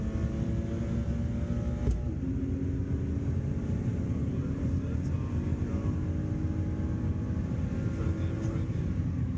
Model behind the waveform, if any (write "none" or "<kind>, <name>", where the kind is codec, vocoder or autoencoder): none